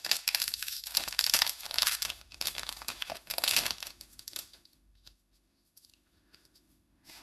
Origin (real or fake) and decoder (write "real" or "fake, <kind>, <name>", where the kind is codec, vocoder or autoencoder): fake, autoencoder, DAC-VAE